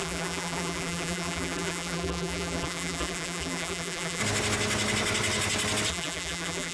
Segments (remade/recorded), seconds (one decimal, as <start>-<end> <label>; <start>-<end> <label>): 0.0-4.2 remade; 4.2-5.9 recorded; 5.9-6.7 remade